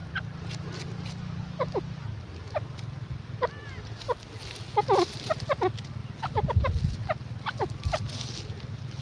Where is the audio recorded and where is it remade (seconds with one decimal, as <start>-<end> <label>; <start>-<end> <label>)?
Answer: 0.0-9.0 recorded